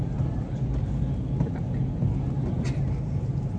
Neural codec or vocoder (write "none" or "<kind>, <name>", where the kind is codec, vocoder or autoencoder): none